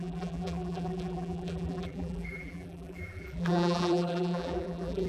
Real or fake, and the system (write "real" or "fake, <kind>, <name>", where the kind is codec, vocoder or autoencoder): fake, vocoder, BigVGAN v2